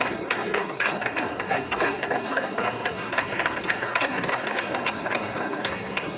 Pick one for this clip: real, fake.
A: fake